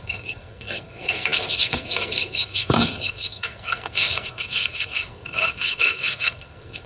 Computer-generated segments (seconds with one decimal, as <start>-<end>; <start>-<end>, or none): 0.0-6.9